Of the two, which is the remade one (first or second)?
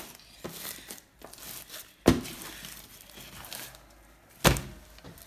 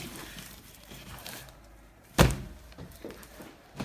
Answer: second